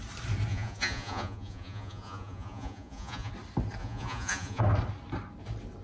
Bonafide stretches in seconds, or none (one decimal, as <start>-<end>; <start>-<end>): 0.0-0.5; 3.3-3.8; 4.6-5.8